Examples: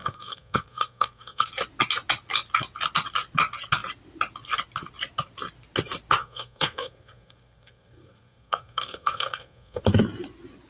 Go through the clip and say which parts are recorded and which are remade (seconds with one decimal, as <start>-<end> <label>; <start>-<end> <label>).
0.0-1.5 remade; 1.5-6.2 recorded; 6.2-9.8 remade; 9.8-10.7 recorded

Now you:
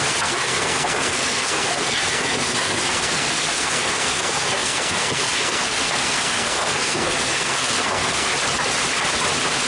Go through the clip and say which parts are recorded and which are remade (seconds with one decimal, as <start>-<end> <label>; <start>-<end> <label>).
0.0-8.3 remade; 8.3-9.7 recorded

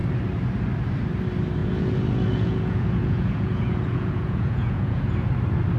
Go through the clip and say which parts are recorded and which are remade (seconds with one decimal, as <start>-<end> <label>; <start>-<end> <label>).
0.0-1.6 recorded; 1.6-5.1 remade; 5.1-5.8 recorded

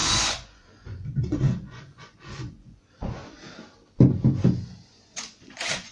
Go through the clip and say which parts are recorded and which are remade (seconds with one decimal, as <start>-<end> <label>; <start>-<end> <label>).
0.0-3.5 remade; 3.5-4.9 recorded; 4.9-5.9 remade

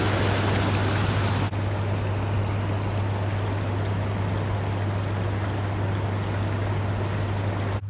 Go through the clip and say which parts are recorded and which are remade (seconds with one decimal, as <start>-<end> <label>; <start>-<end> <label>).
0.0-7.9 recorded

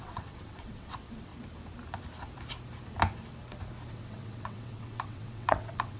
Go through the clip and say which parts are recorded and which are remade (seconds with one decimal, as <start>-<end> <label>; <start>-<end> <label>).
0.0-1.3 remade; 1.3-3.9 recorded; 3.9-6.0 remade